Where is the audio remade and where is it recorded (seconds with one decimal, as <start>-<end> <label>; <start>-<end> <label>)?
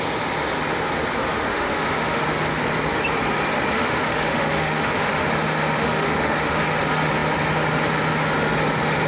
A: 0.0-1.5 recorded; 1.5-2.2 remade; 2.2-3.7 recorded; 3.7-6.6 remade; 6.6-9.1 recorded